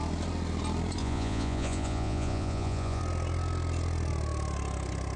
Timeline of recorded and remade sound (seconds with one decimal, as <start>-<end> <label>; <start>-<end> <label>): 0.0-1.0 recorded; 1.0-3.0 remade; 3.0-5.2 recorded